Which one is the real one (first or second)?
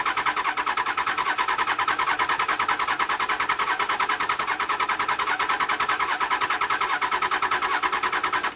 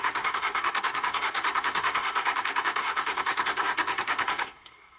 first